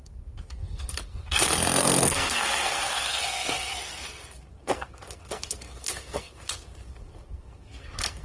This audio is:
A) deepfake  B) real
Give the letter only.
A